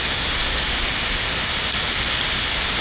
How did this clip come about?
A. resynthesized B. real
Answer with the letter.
B